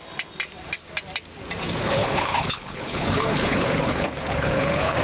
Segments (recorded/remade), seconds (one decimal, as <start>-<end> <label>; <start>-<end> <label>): 0.0-1.8 recorded; 1.8-5.0 remade

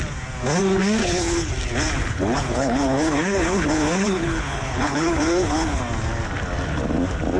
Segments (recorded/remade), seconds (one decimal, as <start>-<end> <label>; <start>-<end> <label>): 0.0-1.0 recorded; 1.0-1.5 remade; 1.5-2.0 recorded; 2.0-5.8 remade; 5.8-7.4 recorded